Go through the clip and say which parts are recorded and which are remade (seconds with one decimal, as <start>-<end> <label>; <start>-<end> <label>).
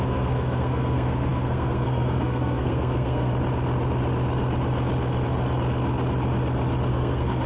0.0-3.3 remade; 3.3-6.9 recorded; 6.9-7.5 remade